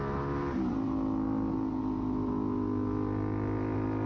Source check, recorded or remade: recorded